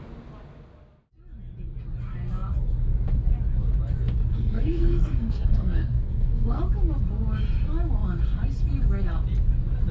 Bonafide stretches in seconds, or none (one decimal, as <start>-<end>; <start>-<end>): 0.0-4.3; 6.6-9.9